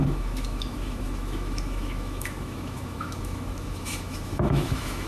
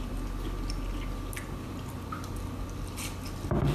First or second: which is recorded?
second